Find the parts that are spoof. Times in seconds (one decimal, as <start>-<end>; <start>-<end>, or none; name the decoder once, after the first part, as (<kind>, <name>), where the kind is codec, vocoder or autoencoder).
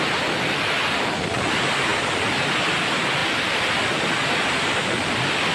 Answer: none